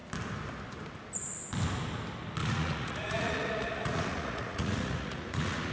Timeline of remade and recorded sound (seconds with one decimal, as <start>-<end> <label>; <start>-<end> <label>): 0.0-2.4 recorded; 2.4-5.7 remade